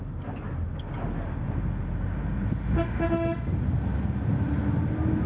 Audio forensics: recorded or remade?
recorded